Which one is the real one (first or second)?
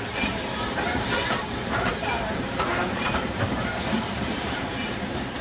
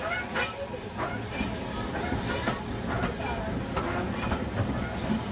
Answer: second